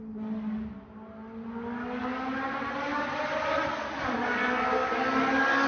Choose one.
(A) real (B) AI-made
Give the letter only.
A